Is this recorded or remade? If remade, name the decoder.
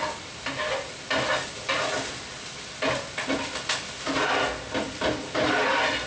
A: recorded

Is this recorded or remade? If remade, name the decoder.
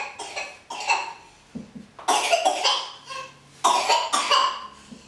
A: recorded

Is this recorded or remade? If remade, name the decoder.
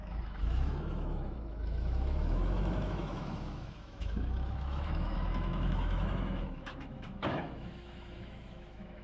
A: remade, autoencoder, DAC-VAE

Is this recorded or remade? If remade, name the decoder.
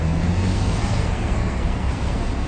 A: remade, codec, SNAC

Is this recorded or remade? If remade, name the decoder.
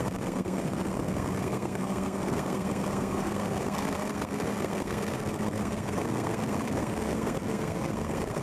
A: remade, codec, SNAC